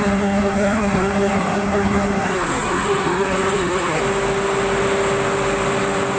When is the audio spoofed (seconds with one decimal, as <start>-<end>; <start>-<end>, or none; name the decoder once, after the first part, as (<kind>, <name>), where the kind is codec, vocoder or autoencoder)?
0.0-4.0 (codec, SNAC)